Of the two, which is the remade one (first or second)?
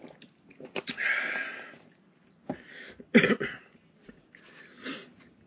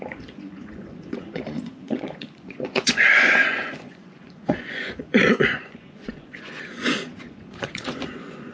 second